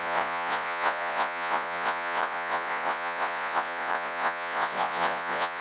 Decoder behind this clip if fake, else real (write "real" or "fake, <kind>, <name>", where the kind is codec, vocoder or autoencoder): fake, vocoder, Vocos